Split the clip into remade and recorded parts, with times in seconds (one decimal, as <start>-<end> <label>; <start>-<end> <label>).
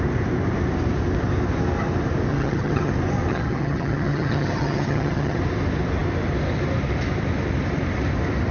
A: 0.0-2.3 recorded; 2.3-2.9 remade; 2.9-3.3 recorded; 3.3-5.4 remade; 5.4-8.5 recorded